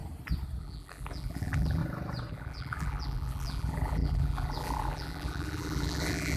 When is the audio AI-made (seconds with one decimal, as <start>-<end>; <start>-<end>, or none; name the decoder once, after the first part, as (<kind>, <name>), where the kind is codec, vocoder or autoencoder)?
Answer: 0.6-1.8 (vocoder, BigVGAN v2); 2.3-6.4